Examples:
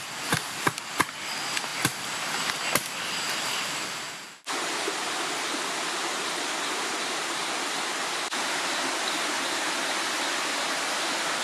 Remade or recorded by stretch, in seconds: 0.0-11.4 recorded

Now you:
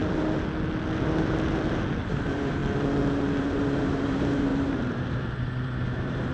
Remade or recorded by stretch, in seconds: 0.0-2.0 recorded; 2.0-2.6 remade; 2.6-3.4 recorded; 3.4-6.3 remade